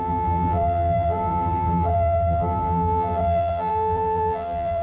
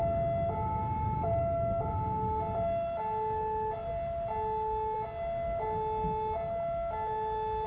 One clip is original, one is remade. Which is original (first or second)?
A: second